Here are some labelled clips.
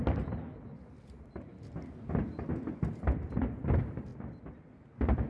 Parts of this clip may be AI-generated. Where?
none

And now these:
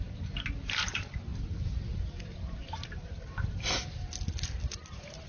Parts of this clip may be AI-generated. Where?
none

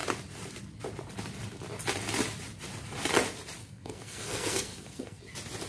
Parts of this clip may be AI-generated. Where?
3.6-5.2 (codec, SNAC)

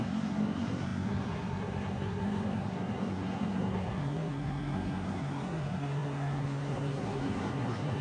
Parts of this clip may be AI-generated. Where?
0.0-8.0 (codec, SNAC)